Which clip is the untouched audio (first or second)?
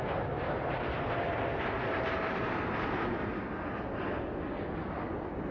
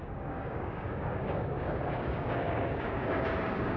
first